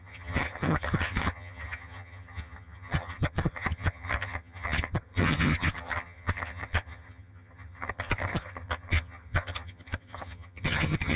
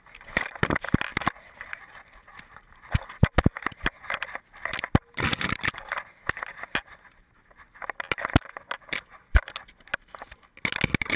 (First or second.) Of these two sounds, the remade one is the first